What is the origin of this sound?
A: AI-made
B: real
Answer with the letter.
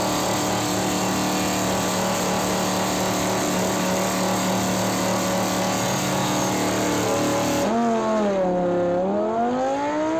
B